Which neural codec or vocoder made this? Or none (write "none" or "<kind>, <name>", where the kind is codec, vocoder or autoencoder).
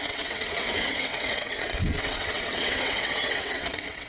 vocoder, WaveNeXt